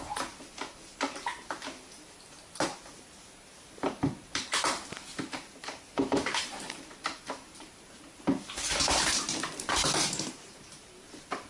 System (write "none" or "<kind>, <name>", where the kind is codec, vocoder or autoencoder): vocoder, BigVGAN v2